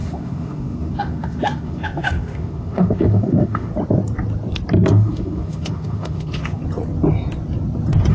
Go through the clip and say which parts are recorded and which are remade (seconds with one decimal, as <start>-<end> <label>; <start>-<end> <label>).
0.0-3.7 remade; 3.7-4.9 recorded; 4.9-6.6 remade; 6.6-8.1 recorded